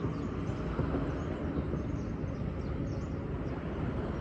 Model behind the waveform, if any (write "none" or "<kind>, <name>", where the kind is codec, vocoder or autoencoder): none